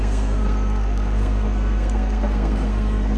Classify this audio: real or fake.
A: fake